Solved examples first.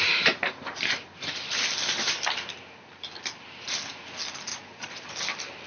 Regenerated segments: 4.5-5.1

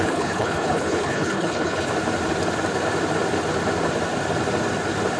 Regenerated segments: 0.0-1.9

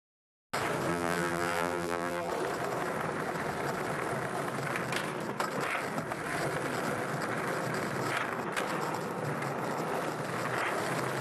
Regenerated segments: 0.9-2.3

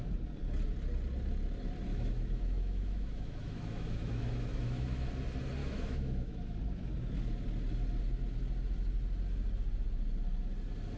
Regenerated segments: 1.9-5.1; 5.6-6.6